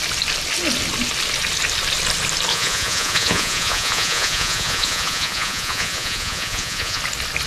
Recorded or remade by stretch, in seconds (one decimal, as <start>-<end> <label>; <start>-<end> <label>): 0.0-2.5 recorded; 2.5-7.0 remade; 7.0-7.5 recorded